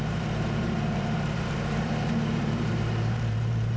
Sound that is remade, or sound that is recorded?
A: remade